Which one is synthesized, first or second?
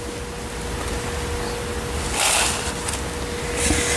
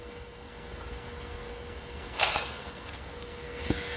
second